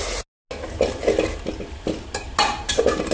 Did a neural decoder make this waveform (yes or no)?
no